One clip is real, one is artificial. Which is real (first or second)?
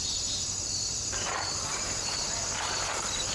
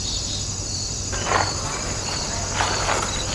second